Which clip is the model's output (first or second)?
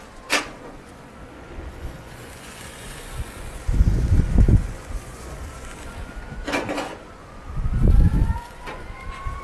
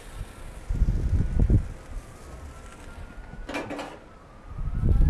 first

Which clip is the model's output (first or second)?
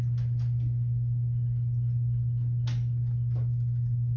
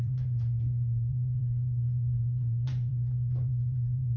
second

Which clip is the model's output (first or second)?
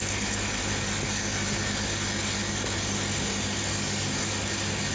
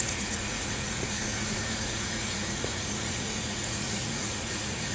second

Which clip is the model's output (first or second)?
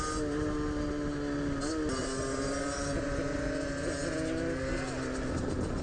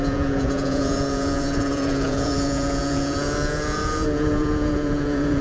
second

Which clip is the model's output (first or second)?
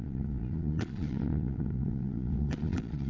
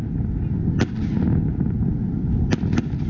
first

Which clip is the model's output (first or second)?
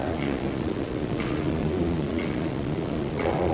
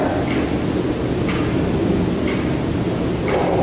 first